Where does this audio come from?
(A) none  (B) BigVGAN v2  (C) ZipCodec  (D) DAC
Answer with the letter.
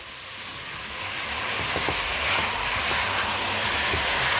A